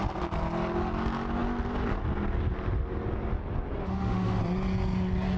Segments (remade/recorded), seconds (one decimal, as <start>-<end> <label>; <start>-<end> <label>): 0.0-3.8 recorded; 3.8-4.4 remade; 4.4-5.4 recorded